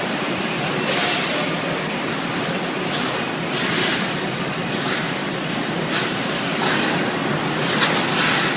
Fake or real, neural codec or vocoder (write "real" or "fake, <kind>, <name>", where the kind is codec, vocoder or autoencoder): fake, vocoder, BigVGAN v2